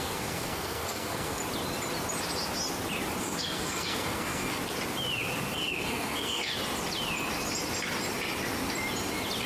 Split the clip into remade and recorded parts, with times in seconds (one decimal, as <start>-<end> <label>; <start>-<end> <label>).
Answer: 0.0-1.4 remade; 1.4-3.2 recorded; 3.2-4.6 remade; 4.6-5.5 recorded; 5.5-6.5 remade; 6.5-9.5 recorded